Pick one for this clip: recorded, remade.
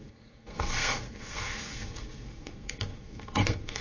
remade